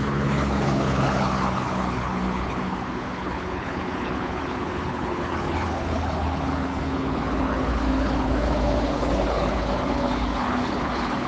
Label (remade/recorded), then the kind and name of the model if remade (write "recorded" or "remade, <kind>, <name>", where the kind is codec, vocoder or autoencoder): remade, codec, HILCodec